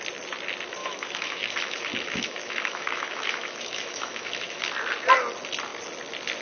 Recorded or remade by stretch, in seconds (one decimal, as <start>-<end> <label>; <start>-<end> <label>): 0.0-0.8 recorded; 0.8-4.6 remade; 4.6-6.4 recorded